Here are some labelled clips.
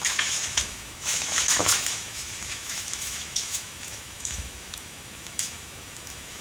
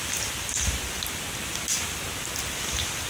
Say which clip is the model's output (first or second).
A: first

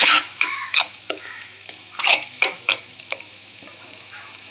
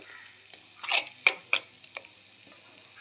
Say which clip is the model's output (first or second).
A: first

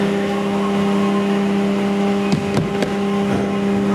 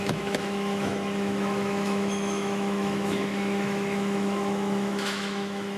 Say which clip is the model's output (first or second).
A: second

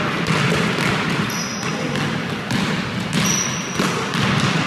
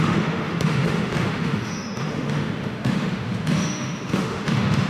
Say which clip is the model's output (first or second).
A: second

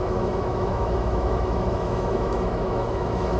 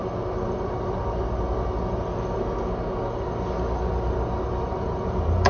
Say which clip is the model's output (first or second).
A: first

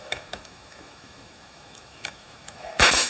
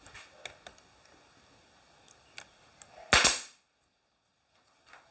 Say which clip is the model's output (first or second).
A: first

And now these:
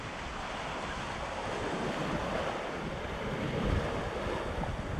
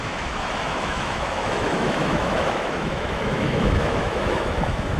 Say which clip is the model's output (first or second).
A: second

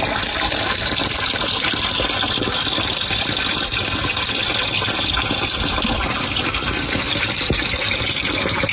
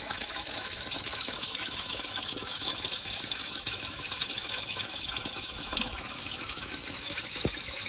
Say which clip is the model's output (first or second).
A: second